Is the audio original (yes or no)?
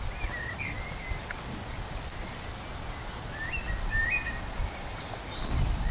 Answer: yes